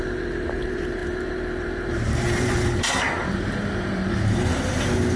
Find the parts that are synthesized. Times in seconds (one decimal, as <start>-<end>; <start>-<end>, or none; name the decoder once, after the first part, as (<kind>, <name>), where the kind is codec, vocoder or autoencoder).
0.0-5.2 (vocoder, BigVGAN v2)